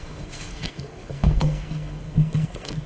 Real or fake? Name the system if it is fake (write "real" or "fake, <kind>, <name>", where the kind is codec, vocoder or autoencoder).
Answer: fake, codec, SNAC